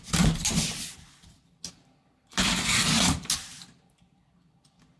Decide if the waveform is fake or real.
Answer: real